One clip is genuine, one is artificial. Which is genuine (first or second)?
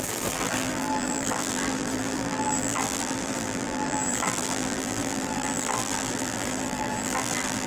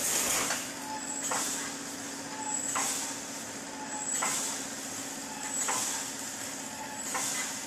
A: second